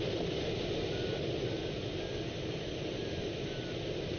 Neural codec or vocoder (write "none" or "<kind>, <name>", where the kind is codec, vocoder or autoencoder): none